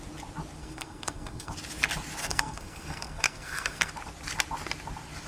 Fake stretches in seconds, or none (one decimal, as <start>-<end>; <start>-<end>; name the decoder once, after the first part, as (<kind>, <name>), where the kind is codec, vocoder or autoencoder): 0.6-1.5 (codec, SNAC); 2.2-3.9